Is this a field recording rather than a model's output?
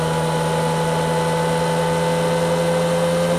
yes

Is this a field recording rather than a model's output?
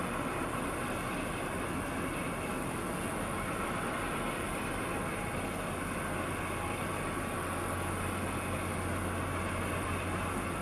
yes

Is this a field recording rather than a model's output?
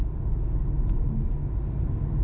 yes